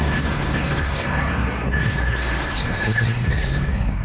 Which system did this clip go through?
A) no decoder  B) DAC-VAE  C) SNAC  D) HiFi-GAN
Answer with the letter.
C